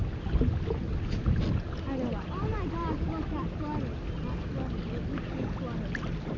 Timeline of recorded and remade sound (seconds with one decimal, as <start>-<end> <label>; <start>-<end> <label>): 0.0-6.4 recorded